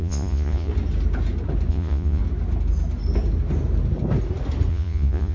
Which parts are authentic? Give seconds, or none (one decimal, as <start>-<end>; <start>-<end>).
0.7-1.7; 2.2-4.7